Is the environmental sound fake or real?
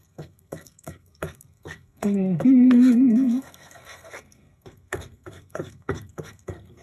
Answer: fake